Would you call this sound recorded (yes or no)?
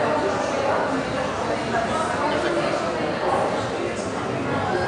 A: yes